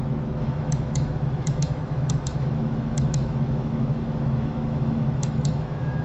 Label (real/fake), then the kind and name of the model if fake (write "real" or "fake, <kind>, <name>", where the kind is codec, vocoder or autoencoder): fake, autoencoder, DAC-VAE